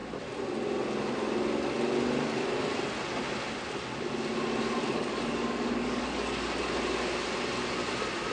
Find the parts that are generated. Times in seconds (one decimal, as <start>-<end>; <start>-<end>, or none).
4.9-6.6